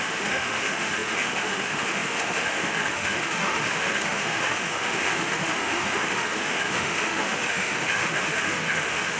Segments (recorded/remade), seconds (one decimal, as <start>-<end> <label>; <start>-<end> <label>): 0.0-9.2 remade